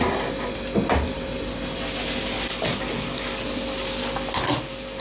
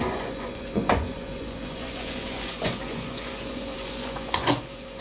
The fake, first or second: second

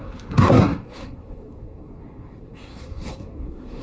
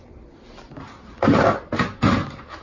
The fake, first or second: first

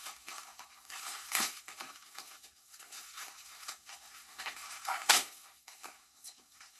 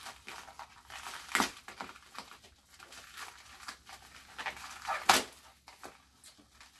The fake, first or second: first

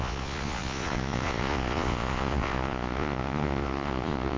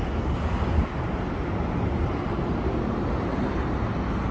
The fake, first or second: first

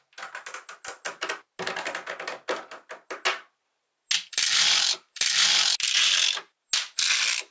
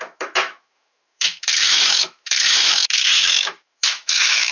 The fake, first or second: second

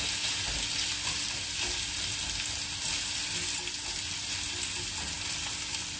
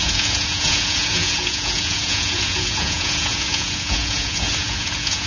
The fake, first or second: second